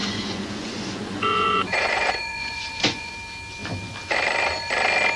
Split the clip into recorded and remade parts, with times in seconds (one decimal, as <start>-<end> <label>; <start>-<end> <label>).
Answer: 0.0-3.1 remade; 3.1-5.2 recorded